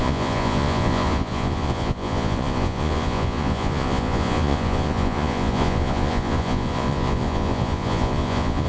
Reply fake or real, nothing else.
fake